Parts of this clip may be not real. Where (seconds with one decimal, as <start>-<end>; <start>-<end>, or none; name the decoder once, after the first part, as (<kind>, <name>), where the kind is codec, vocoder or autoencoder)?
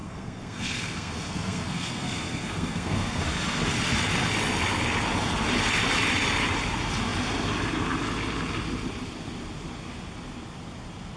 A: 0.0-3.2 (codec, SNAC)